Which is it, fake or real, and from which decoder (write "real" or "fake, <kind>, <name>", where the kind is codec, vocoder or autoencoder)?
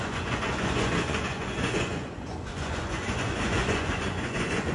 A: fake, vocoder, Vocos